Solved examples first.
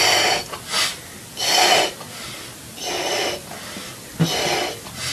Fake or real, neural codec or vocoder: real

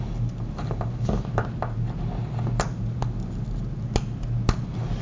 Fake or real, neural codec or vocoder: real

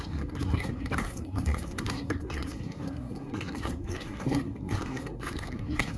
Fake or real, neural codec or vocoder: fake, codec, SNAC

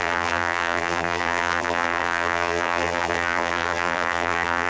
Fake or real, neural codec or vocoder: fake, vocoder, BigVGAN v2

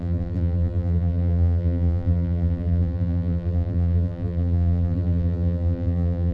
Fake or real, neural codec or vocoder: fake, vocoder, BigVGAN v2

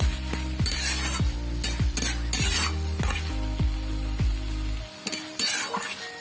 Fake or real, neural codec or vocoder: real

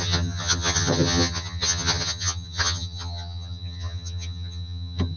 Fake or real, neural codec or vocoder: fake, vocoder, HiFi-GAN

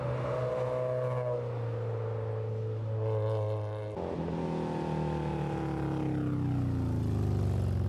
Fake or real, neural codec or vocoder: real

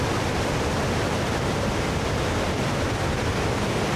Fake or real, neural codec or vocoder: real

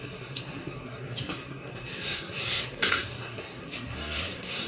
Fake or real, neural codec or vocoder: fake, codec, SNAC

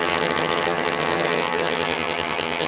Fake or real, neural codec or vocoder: fake, vocoder, HiFi-GAN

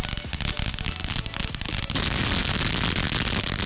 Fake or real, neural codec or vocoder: real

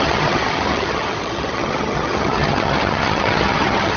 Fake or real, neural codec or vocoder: fake, vocoder, HiFi-GAN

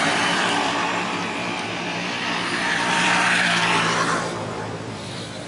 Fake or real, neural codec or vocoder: fake, vocoder, BigVGAN v2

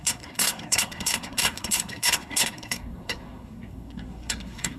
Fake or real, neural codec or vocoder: fake, codec, SNAC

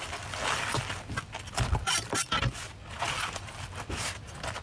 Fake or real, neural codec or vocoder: real